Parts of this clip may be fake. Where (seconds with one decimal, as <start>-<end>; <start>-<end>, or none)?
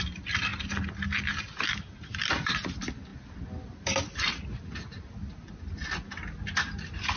none